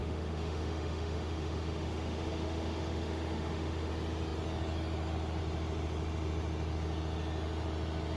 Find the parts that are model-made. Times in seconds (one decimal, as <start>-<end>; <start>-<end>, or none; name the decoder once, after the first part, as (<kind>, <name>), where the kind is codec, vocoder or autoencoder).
0.0-3.9 (autoencoder, DAC-VAE)